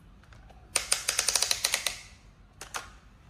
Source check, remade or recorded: recorded